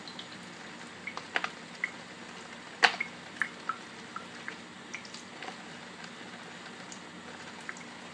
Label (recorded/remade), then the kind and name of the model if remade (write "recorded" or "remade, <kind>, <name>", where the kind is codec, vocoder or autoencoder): recorded